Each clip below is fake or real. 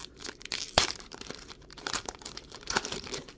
fake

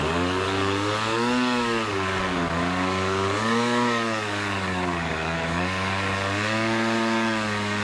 fake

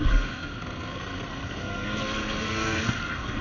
fake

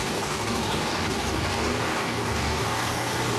fake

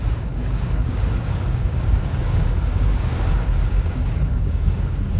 fake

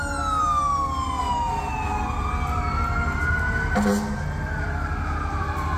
real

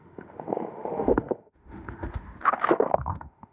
fake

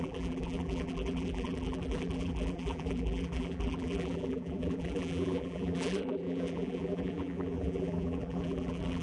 fake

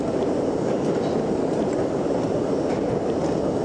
real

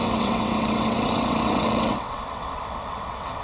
fake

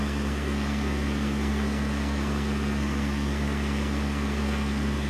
fake